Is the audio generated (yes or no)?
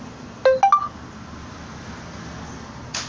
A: no